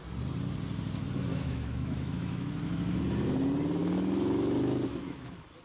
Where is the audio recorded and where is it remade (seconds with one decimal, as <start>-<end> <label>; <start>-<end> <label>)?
0.0-1.3 recorded; 1.3-3.0 remade; 3.0-3.8 recorded; 3.8-5.6 remade